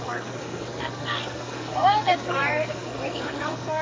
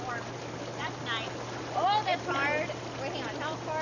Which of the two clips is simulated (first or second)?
first